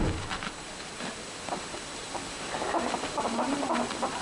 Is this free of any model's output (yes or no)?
no